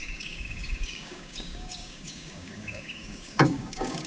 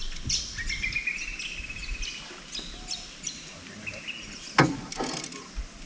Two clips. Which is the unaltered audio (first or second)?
second